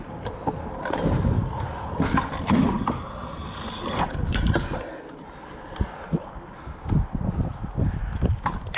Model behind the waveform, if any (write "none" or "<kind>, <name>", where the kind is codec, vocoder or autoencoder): none